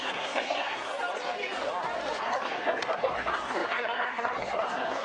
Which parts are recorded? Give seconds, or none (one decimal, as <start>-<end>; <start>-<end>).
0.9-2.2